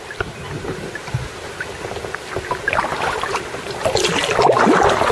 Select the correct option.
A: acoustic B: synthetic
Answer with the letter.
A